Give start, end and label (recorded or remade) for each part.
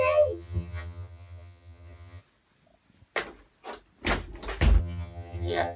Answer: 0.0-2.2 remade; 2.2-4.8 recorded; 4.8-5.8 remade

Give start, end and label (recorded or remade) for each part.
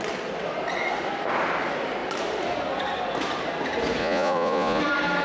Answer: 0.0-4.0 recorded; 4.0-4.8 remade; 4.8-5.2 recorded